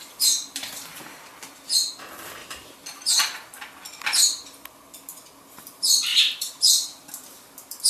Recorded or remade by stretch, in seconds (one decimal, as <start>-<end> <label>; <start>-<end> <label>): 0.0-2.4 recorded; 2.4-3.0 remade; 3.0-6.1 recorded; 6.1-7.1 remade; 7.1-7.9 recorded